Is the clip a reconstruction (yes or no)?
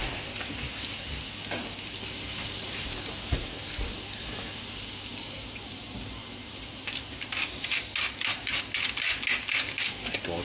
no